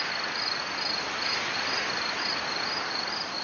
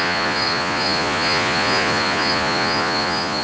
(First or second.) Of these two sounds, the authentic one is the first